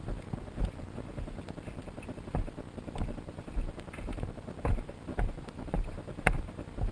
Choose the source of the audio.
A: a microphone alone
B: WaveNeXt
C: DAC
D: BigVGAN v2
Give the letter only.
A